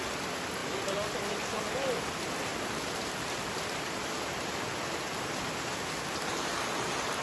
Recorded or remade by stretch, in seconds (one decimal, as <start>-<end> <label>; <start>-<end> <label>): 0.0-0.6 recorded; 0.6-1.3 remade; 1.3-2.5 recorded; 2.5-4.8 remade; 4.8-7.2 recorded